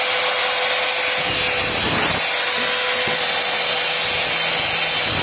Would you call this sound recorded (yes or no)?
yes